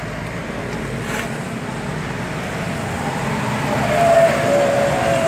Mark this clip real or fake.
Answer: real